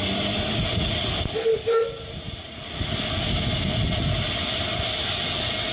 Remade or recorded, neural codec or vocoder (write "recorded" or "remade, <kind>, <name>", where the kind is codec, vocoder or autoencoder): recorded